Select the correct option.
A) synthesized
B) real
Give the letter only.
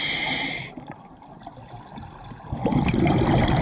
B